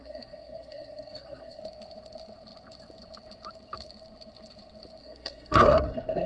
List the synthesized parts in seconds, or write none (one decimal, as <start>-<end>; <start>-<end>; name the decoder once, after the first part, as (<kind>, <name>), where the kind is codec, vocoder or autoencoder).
0.0-1.6 (codec, SNAC); 5.0-6.3